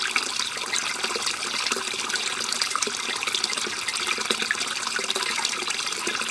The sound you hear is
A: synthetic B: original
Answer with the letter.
B